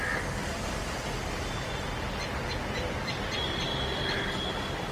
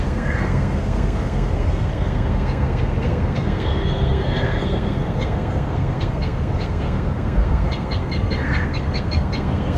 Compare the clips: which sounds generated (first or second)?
second